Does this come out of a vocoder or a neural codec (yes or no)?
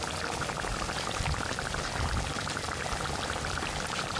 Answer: yes